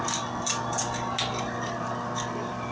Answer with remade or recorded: recorded